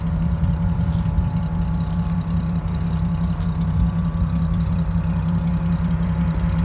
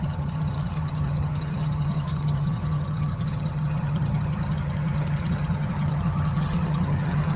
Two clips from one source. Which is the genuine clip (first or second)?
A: first